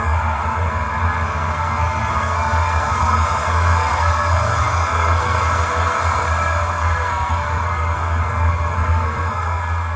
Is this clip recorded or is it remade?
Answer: remade